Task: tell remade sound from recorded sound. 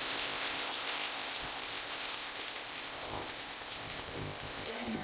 remade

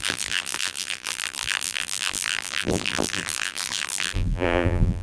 remade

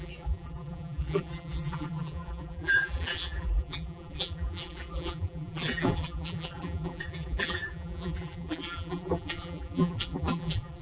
remade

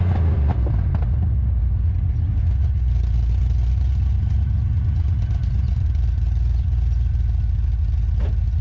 recorded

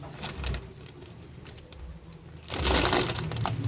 recorded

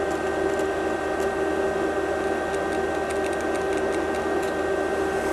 recorded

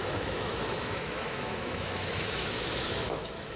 remade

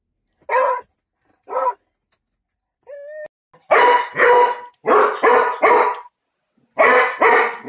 recorded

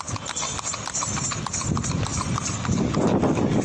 recorded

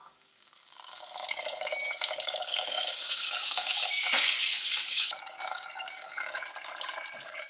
remade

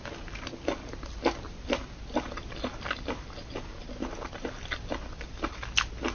recorded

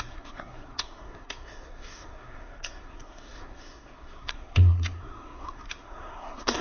remade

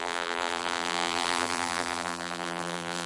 remade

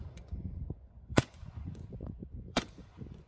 remade